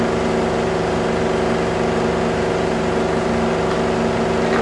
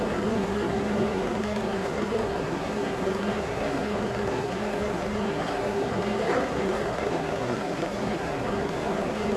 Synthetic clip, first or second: second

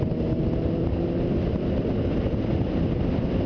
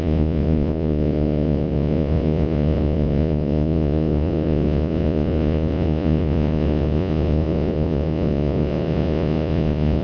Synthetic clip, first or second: second